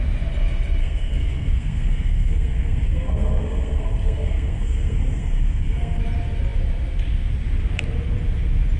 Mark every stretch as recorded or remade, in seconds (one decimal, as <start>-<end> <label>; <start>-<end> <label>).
0.0-0.8 recorded; 0.8-6.0 remade; 6.0-8.8 recorded